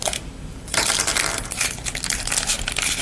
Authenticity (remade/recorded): recorded